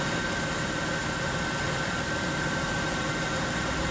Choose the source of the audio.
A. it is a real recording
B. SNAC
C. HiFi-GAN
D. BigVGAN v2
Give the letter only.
D